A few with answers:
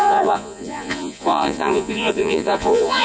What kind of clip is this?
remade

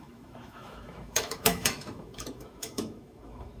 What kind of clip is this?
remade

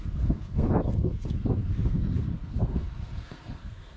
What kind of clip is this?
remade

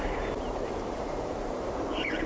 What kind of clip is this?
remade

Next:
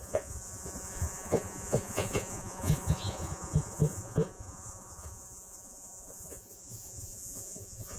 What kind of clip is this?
remade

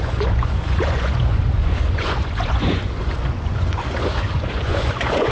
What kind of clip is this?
remade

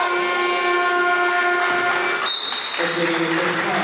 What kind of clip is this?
recorded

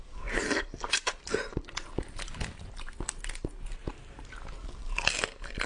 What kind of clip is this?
recorded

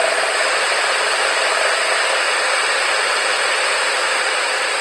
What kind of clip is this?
recorded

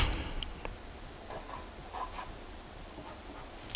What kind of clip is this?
recorded